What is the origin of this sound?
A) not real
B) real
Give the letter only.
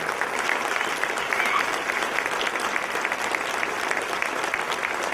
B